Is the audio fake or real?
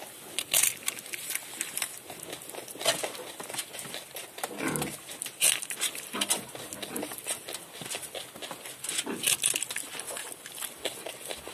real